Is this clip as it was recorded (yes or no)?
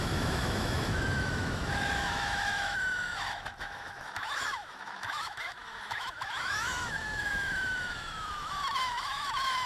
no